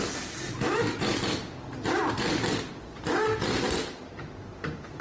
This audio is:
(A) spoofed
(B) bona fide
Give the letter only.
B